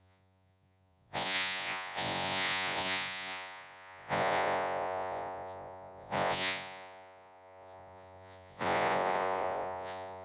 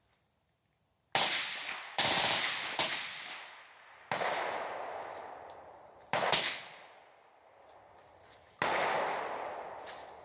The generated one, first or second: first